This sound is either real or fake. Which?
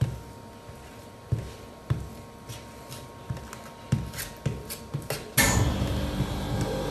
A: real